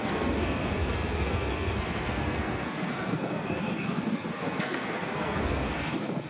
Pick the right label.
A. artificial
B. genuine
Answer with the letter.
A